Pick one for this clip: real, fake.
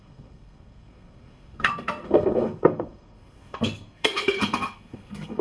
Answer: fake